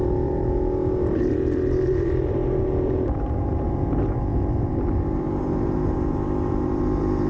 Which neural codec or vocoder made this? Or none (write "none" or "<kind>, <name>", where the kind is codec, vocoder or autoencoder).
vocoder, BigVGAN v2